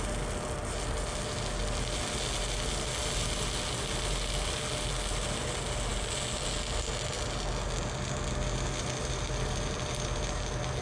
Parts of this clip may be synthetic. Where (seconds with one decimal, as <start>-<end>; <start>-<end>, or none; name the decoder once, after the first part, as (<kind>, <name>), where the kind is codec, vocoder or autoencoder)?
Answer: none